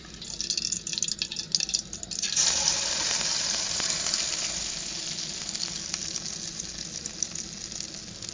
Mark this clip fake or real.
real